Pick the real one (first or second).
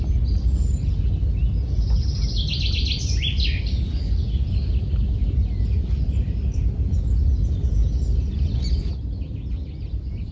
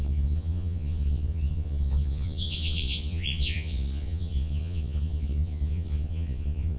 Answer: first